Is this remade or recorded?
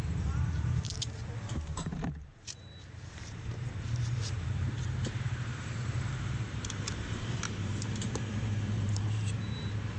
remade